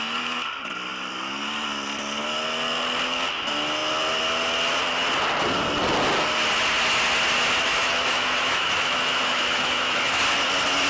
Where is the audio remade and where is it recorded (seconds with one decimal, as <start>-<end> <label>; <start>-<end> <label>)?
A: 0.0-7.7 recorded; 7.7-10.2 remade; 10.2-10.9 recorded